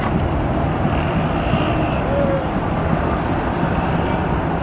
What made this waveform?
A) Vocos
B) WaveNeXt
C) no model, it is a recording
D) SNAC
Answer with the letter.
C